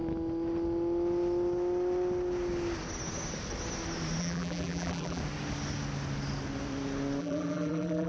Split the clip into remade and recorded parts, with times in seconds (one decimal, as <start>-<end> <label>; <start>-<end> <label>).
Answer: 0.0-4.2 recorded; 4.2-5.2 remade; 5.2-7.2 recorded; 7.2-8.1 remade